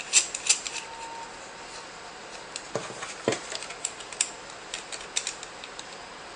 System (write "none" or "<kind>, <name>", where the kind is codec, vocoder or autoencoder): none